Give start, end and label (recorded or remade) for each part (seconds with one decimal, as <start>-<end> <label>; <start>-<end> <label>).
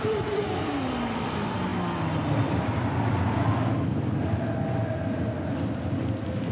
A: 0.0-6.5 recorded